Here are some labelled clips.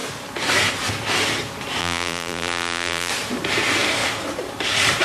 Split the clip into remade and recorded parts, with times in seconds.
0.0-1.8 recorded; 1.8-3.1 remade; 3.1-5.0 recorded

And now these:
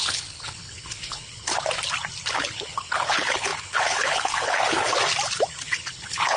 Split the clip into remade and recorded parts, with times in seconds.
0.0-1.5 remade; 1.5-2.3 recorded; 2.3-4.9 remade; 4.9-5.6 recorded; 5.6-6.4 remade